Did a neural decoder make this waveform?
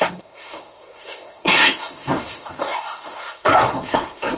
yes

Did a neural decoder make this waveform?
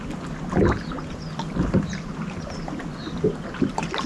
no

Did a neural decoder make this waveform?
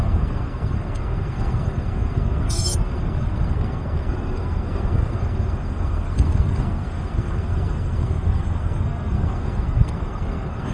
yes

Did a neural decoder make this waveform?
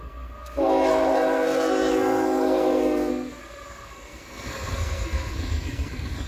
yes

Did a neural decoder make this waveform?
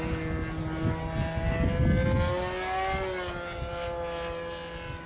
no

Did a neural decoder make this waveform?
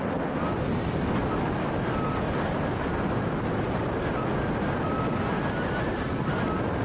no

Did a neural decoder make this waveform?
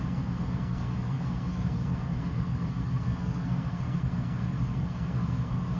yes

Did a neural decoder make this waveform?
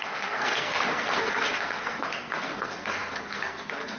yes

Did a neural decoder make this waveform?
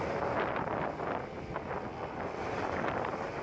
no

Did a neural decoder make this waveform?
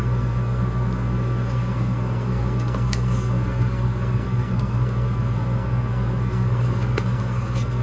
yes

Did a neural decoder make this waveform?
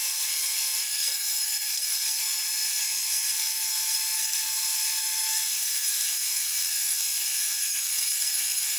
yes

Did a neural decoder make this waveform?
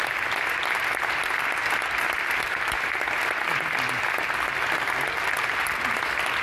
no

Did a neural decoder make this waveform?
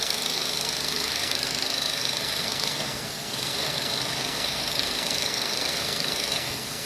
yes